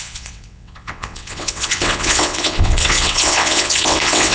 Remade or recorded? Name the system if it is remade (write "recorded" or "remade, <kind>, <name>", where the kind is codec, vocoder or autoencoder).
remade, vocoder, WaveNeXt